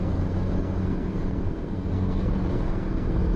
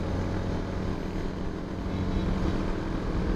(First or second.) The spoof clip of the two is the first